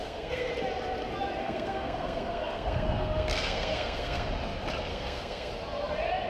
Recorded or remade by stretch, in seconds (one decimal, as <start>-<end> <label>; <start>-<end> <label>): 0.0-0.5 remade; 0.5-1.4 recorded; 1.4-4.3 remade; 4.3-4.9 recorded; 4.9-5.5 remade; 5.5-6.3 recorded